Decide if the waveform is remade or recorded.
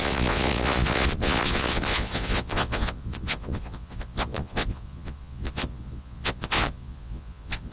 remade